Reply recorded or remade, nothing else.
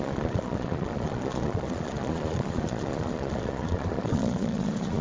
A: remade